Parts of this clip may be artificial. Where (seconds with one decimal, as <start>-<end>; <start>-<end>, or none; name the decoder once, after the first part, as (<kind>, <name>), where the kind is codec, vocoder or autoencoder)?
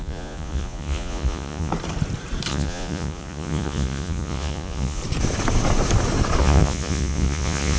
0.0-1.7 (vocoder, Vocos); 2.5-5.0; 6.4-7.8